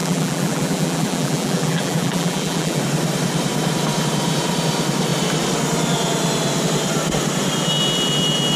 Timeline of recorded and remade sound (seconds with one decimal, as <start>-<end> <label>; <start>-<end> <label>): 0.0-2.8 remade; 2.8-8.6 recorded